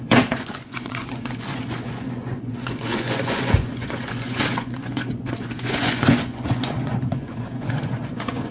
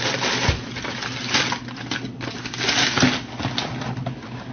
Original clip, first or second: second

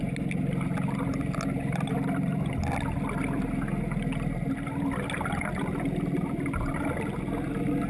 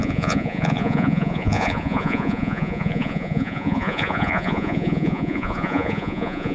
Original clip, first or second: first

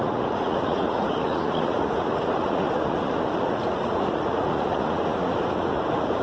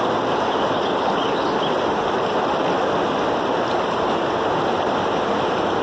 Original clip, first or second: second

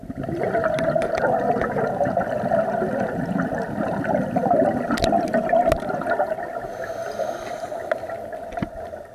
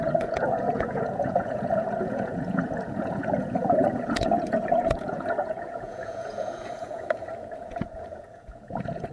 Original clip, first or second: first